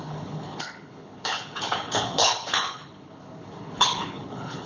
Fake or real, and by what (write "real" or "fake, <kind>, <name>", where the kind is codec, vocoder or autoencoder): fake, codec, HILCodec